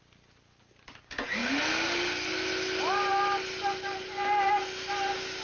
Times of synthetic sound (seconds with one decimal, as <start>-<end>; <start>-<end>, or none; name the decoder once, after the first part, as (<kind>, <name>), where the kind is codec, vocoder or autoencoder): none